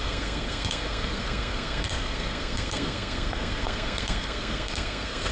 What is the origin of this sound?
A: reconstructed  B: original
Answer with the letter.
A